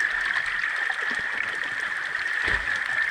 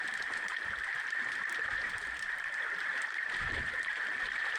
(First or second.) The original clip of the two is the first